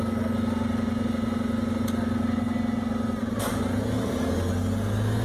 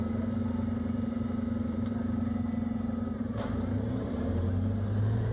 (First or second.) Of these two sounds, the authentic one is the first